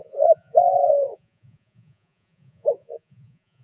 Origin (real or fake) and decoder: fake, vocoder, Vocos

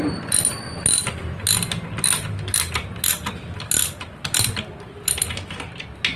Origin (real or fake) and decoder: real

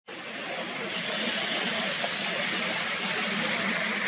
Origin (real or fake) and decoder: real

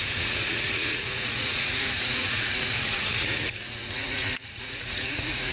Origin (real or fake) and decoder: fake, vocoder, Vocos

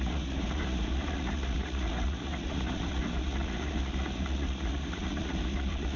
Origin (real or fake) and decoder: fake, vocoder, Vocos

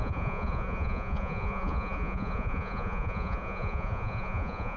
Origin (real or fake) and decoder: fake, vocoder, Vocos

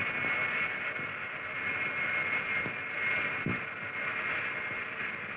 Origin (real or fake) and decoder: real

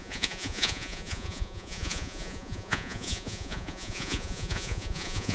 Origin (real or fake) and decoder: fake, vocoder, Vocos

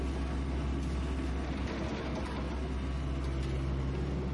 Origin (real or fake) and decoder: real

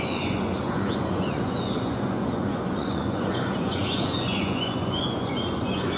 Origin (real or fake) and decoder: fake, vocoder, Vocos